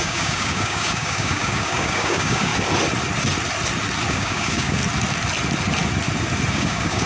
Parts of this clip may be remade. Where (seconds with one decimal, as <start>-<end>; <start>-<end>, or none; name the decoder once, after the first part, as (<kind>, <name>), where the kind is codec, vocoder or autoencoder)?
0.0-2.5 (codec, DAC); 4.1-4.8; 6.5-7.1